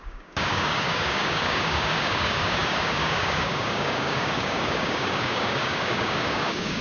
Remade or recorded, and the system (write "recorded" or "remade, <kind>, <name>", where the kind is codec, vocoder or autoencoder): remade, codec, DAC